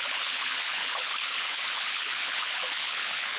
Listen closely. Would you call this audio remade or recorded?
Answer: remade